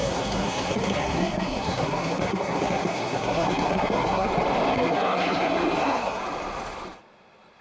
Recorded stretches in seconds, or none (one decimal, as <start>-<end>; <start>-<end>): 4.3-4.7; 6.2-7.6